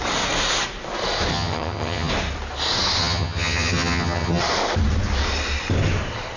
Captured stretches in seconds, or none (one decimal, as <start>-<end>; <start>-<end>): 0.0-1.3; 2.1-3.0; 4.4-6.4

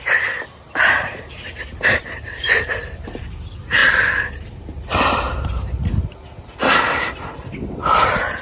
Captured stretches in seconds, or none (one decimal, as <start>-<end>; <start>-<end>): 3.8-7.7

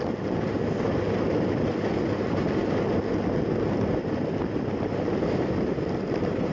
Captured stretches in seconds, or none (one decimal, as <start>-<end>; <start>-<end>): 0.0-5.2; 5.8-6.5

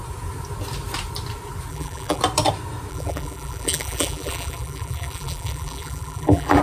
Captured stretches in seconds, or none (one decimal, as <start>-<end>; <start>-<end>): 0.0-1.7; 2.2-2.9

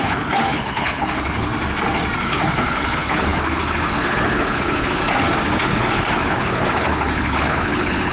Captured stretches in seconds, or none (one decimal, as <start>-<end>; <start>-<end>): 1.5-2.2; 5.0-5.6

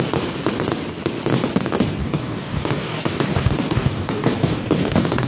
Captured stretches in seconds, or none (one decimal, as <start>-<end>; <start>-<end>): 0.0-2.0

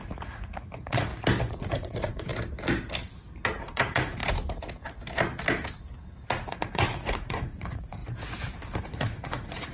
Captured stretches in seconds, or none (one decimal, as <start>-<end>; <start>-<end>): 1.1-1.6; 2.3-3.6; 4.2-6.5; 8.0-8.8

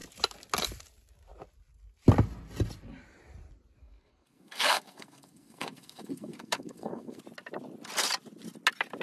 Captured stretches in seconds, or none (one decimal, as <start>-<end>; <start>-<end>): 0.0-3.8; 7.2-9.0